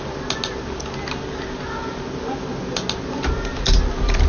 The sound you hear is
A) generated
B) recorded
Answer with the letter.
B